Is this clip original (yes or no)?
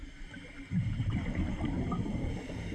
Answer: no